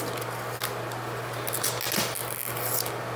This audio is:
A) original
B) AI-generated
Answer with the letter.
A